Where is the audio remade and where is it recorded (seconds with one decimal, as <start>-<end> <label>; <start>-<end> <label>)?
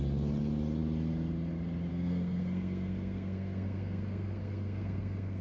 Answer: 0.0-1.9 recorded; 1.9-5.4 remade